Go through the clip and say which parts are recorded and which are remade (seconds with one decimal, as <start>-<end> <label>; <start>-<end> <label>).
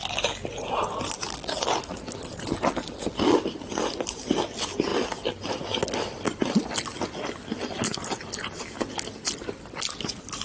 0.0-10.4 recorded